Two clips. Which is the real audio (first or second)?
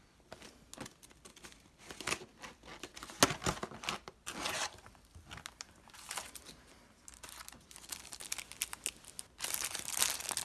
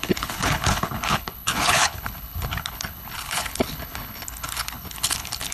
first